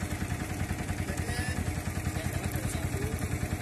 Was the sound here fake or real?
real